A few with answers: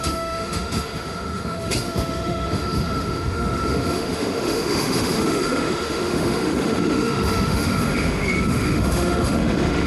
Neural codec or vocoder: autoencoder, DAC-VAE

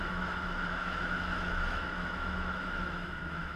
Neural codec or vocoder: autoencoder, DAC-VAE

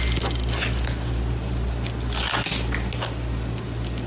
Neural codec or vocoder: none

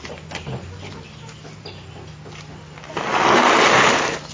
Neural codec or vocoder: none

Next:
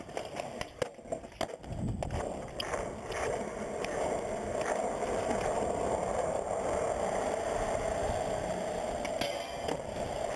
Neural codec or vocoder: none